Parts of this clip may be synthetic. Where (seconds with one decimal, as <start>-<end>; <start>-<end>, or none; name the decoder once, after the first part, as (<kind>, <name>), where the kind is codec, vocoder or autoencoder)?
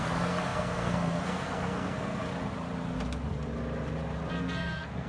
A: 0.0-2.2 (codec, SNAC); 4.3-5.1